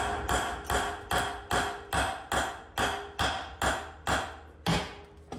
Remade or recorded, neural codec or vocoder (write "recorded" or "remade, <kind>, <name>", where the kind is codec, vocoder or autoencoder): recorded